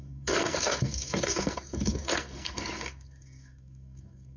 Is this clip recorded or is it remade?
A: remade